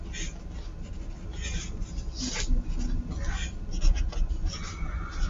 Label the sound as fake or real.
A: real